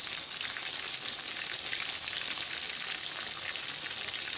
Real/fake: real